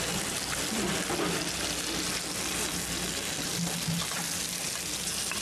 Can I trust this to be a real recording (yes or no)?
yes